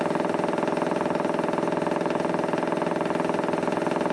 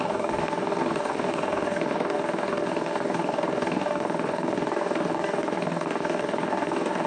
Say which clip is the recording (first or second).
first